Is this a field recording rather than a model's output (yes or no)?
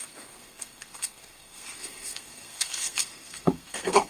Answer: no